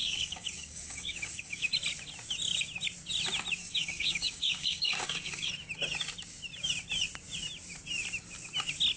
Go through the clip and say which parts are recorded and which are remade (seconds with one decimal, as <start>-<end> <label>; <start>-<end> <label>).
0.0-1.7 remade; 1.7-3.6 recorded; 3.6-5.5 remade; 5.5-9.0 recorded